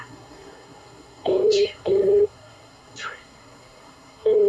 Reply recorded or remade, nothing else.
remade